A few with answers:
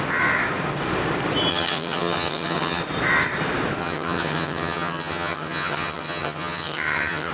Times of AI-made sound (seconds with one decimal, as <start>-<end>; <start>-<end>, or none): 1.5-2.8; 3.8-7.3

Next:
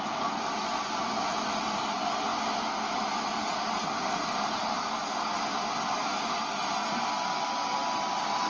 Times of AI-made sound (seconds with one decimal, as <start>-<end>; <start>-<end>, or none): none

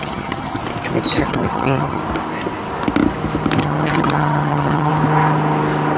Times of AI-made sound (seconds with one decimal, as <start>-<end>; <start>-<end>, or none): 0.0-0.6; 1.2-2.0; 3.6-4.9

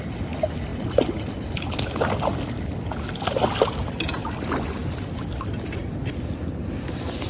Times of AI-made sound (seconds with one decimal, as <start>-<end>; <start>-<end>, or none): none